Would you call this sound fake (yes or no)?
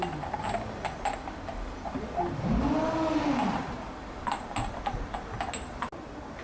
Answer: no